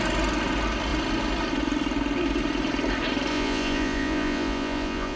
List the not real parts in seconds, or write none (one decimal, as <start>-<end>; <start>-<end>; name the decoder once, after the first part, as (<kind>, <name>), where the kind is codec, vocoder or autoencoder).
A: 3.3-5.2 (vocoder, Vocos)